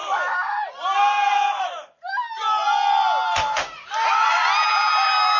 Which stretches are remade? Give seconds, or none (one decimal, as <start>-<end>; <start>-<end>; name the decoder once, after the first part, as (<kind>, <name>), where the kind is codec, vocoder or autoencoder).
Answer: none

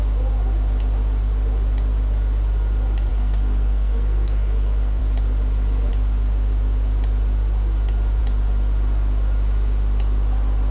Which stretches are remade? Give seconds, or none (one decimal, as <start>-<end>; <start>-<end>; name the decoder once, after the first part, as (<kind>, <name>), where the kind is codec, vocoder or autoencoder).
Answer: 3.1-5.0 (codec, SNAC)